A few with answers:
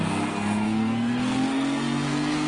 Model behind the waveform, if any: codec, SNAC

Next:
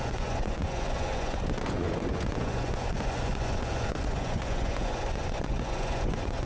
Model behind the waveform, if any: vocoder, Vocos